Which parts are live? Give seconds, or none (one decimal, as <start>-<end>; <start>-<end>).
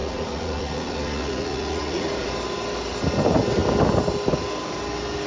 2.3-5.3